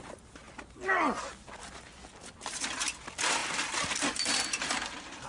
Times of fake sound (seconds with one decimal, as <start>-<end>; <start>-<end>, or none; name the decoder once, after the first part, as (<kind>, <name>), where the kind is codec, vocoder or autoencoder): none